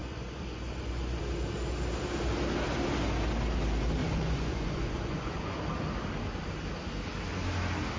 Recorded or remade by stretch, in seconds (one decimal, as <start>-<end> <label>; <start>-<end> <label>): 0.0-1.2 remade; 1.2-4.0 recorded; 4.0-5.6 remade; 5.6-8.0 recorded